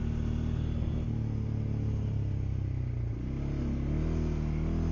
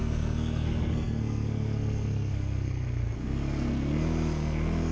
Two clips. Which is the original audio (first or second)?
first